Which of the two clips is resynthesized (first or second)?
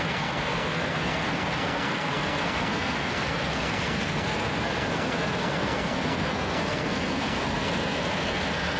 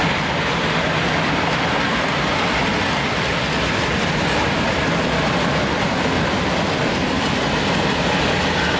first